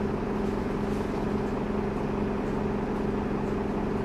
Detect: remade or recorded recorded